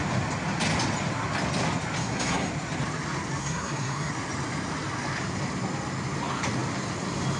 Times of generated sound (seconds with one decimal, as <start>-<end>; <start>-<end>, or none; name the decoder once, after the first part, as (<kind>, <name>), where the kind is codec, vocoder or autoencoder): 2.0-2.5 (codec, SNAC); 3.4-4.1